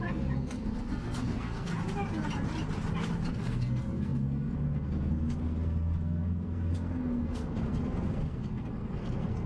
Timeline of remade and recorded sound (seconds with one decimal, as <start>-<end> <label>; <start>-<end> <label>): 0.0-1.7 remade; 1.7-3.3 recorded; 3.3-9.5 remade